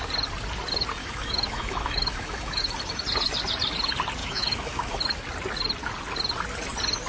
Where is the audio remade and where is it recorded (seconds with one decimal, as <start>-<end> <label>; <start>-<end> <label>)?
0.0-1.0 recorded; 1.0-2.6 remade; 2.6-4.2 recorded; 4.2-5.0 remade; 5.0-7.1 recorded